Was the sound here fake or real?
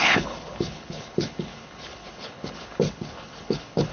fake